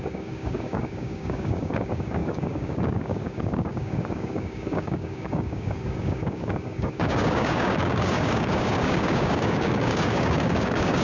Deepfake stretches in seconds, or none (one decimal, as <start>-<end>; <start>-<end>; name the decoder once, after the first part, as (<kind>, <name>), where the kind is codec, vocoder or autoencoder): 0.0-11.0 (codec, DAC)